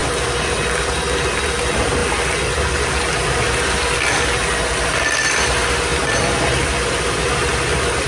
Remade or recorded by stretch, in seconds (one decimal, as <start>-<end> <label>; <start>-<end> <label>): 0.0-8.1 recorded